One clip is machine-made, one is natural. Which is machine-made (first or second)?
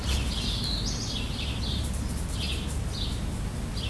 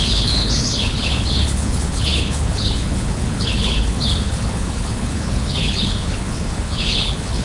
second